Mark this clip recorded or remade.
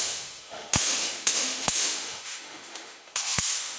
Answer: remade